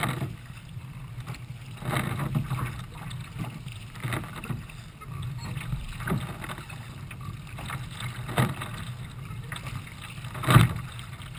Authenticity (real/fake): real